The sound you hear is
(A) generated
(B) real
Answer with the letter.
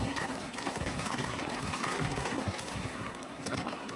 A